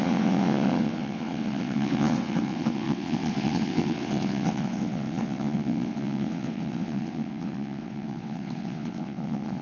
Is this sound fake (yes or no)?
yes